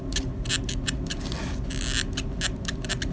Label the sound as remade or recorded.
recorded